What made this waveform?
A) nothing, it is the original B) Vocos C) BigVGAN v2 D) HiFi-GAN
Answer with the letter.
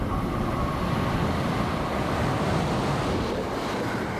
C